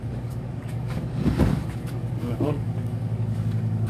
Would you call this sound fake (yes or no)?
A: yes